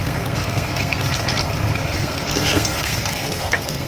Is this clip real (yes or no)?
no